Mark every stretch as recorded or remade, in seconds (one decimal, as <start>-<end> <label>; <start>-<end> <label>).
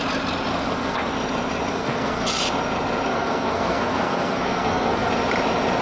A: 0.0-0.5 recorded; 0.5-1.1 remade; 1.1-1.7 recorded; 1.7-2.4 remade; 2.4-3.1 recorded; 3.1-5.1 remade; 5.1-5.8 recorded